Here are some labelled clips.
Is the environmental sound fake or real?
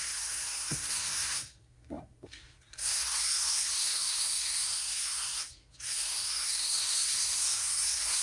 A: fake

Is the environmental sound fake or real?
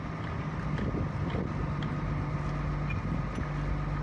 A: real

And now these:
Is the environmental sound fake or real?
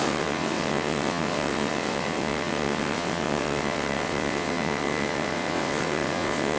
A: fake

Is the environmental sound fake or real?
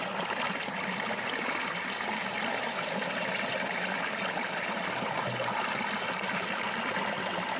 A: real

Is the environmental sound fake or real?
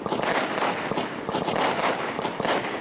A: real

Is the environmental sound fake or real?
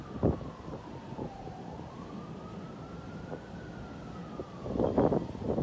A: real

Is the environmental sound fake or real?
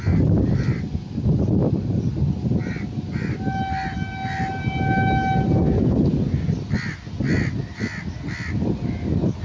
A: real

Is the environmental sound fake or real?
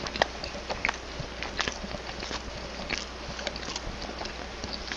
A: real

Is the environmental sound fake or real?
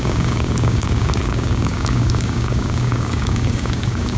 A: fake